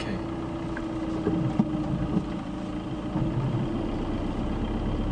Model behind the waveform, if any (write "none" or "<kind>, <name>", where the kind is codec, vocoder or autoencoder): none